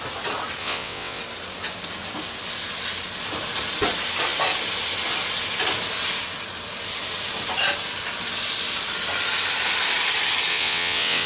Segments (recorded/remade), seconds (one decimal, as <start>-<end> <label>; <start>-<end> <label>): 0.0-0.6 recorded; 0.6-1.2 remade; 1.2-10.5 recorded; 10.5-11.3 remade